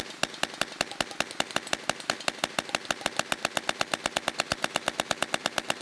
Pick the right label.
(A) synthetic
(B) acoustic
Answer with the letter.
B